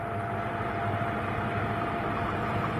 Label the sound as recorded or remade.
recorded